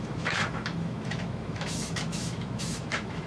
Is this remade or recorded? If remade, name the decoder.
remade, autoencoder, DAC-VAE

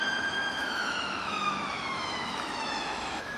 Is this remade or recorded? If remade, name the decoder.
remade, autoencoder, DAC-VAE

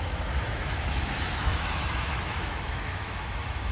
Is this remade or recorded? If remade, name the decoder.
remade, autoencoder, DAC-VAE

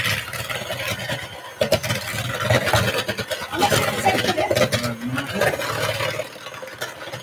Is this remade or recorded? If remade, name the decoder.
recorded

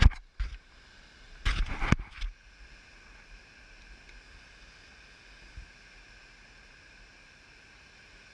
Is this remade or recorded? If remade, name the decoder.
recorded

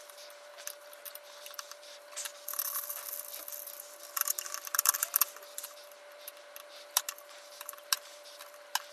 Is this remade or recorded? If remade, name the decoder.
recorded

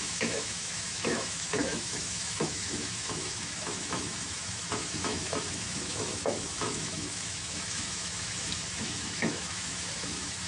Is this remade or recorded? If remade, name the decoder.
remade, autoencoder, DAC-VAE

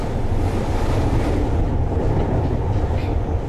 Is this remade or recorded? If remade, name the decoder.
recorded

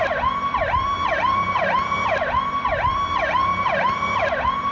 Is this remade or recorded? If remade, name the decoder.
recorded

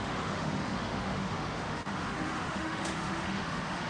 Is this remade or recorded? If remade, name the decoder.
remade, autoencoder, DAC-VAE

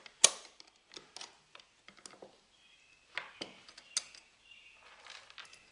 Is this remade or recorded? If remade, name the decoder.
recorded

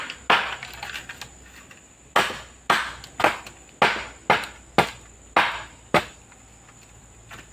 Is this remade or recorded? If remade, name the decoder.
recorded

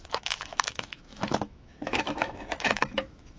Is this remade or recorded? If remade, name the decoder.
remade, autoencoder, DAC-VAE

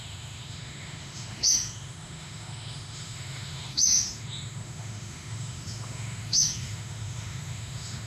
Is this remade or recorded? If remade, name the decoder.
remade, autoencoder, DAC-VAE